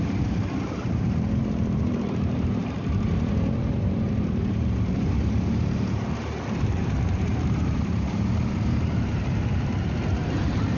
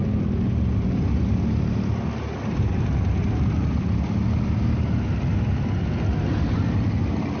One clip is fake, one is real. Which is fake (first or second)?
first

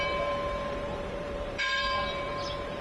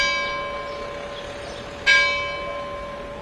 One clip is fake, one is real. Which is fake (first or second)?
first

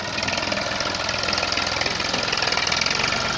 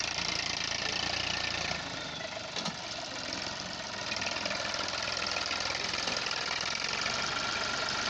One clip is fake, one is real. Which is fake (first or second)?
second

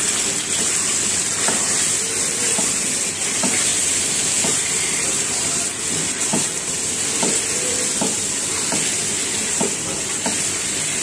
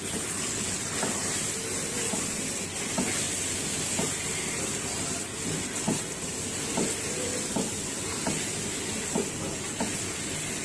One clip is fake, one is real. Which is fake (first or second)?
first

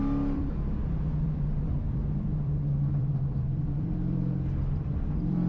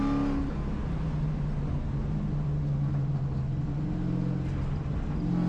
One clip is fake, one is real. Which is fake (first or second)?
first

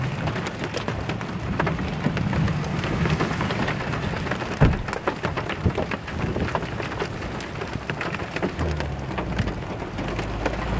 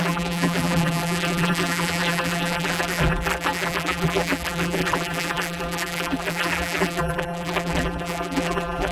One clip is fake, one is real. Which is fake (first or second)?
second